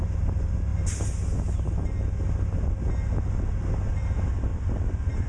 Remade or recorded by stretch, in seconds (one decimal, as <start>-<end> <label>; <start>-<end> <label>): 0.0-5.3 recorded